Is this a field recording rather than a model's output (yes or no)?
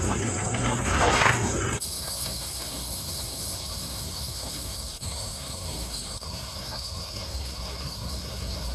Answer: no